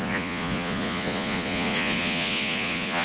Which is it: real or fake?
fake